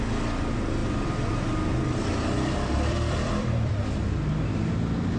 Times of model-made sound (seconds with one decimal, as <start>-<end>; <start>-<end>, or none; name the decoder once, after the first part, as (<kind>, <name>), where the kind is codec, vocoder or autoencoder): 0.8-3.7 (vocoder, BigVGAN v2)